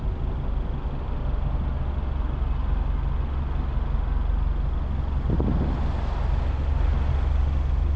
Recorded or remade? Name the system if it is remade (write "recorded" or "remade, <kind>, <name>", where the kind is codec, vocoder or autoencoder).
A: recorded